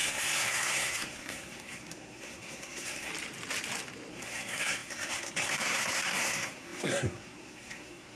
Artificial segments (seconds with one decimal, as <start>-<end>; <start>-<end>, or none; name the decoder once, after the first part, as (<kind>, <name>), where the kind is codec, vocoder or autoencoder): 0.0-3.1 (codec, SNAC); 4.1-8.2